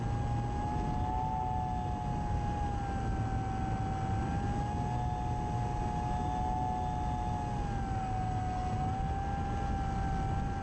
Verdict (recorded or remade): recorded